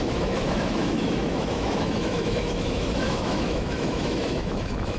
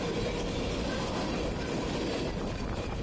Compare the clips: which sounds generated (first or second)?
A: first